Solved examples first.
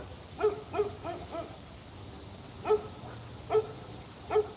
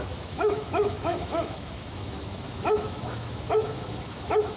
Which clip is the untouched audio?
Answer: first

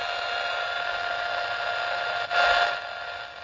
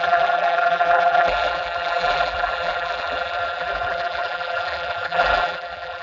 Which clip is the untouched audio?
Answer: first